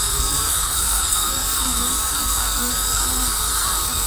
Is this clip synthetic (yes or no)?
yes